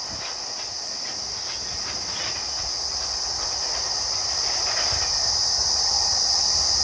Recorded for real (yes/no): yes